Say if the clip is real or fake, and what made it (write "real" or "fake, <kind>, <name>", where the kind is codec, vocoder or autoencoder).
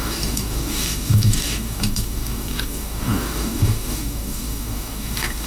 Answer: fake, codec, DAC